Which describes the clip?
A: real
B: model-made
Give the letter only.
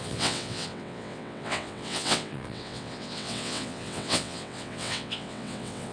B